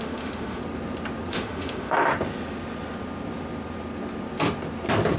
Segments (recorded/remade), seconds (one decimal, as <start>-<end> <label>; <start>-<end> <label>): 0.0-0.6 remade; 0.6-1.3 recorded; 1.3-2.0 remade; 2.0-5.2 recorded